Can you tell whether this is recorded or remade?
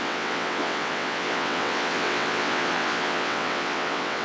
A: remade